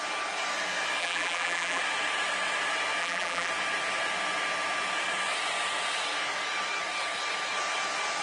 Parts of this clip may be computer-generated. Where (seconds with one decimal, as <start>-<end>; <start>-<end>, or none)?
1.0-1.8; 3.0-3.5